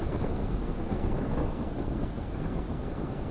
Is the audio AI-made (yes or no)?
yes